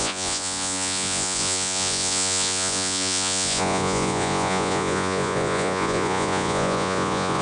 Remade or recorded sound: remade